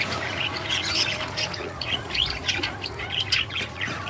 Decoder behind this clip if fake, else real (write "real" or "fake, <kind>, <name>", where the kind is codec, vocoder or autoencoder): fake, vocoder, Vocos